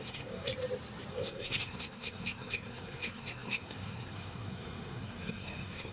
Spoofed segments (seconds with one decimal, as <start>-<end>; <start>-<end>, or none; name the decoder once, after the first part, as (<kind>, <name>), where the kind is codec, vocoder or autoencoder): 0.0-0.5 (codec, SNAC); 1.1-5.9